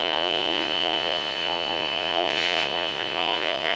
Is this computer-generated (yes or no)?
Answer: yes